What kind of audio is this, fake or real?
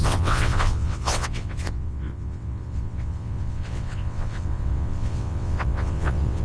fake